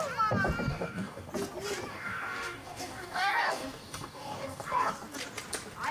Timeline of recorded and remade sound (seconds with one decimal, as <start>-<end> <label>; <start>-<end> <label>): 0.0-0.7 recorded; 0.7-1.3 remade; 1.3-1.9 recorded; 1.9-4.9 remade; 4.9-5.9 recorded